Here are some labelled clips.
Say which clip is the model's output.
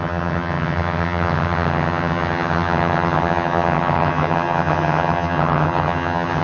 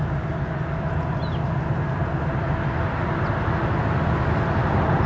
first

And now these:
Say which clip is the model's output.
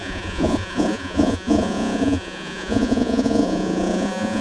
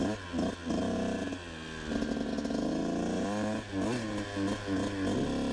first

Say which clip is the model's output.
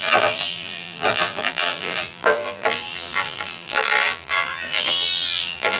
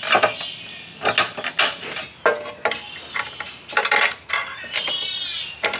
first